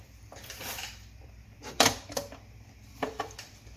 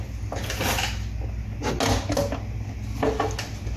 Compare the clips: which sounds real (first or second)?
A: second